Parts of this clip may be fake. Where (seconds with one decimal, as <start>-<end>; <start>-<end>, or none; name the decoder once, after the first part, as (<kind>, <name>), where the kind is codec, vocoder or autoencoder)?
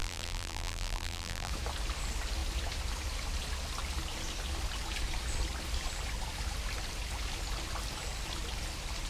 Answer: 0.0-1.5 (vocoder, BigVGAN v2)